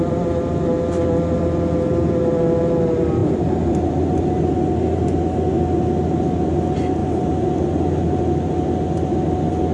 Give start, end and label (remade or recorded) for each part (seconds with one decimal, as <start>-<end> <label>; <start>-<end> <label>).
0.0-7.0 recorded; 7.0-8.2 remade; 8.2-9.7 recorded